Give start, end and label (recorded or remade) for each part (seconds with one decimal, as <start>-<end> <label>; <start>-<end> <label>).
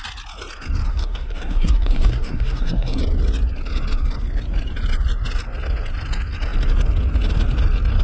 0.0-0.9 recorded; 0.9-3.0 remade; 3.0-8.0 recorded